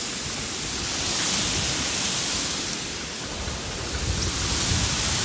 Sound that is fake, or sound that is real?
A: real